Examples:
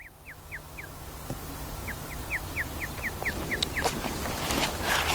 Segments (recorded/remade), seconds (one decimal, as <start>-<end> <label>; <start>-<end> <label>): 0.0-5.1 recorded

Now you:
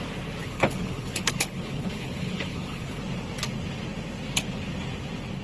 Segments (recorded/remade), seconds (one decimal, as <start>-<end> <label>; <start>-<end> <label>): 0.0-0.4 recorded; 0.4-3.0 remade; 3.0-5.4 recorded

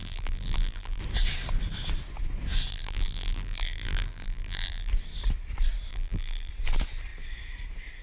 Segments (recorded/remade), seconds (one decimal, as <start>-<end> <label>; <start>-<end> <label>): 0.0-1.0 remade; 1.0-2.7 recorded; 2.7-4.9 remade; 4.9-5.9 recorded; 5.9-6.5 remade; 6.5-8.0 recorded

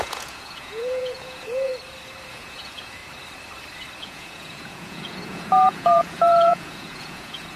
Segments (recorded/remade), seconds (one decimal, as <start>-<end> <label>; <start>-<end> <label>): 0.0-1.7 remade; 1.7-2.3 recorded; 2.3-3.0 remade; 3.0-4.0 recorded; 4.0-7.6 remade

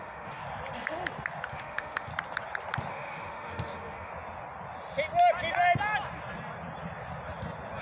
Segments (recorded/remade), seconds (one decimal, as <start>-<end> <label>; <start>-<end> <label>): 0.0-0.4 remade; 0.4-1.5 recorded; 1.5-2.1 remade; 2.1-2.9 recorded; 2.9-4.1 remade; 4.1-7.8 recorded

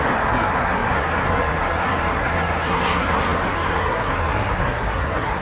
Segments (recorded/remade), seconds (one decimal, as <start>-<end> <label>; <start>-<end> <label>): 0.0-5.4 remade

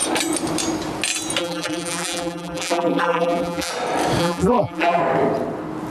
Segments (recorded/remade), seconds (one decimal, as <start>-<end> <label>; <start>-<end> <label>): 0.0-1.4 recorded; 1.4-3.7 remade; 3.7-4.2 recorded; 4.2-5.0 remade; 5.0-5.9 recorded

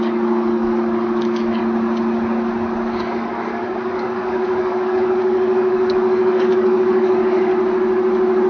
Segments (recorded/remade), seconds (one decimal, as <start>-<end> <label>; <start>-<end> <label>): 0.0-1.6 remade; 1.6-3.0 recorded; 3.0-7.5 remade; 7.5-8.5 recorded